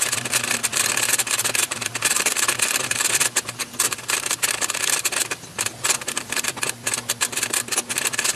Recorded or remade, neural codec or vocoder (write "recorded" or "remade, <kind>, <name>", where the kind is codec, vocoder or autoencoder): remade, vocoder, BigVGAN v2